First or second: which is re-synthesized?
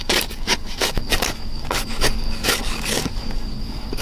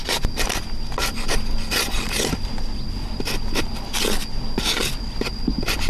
first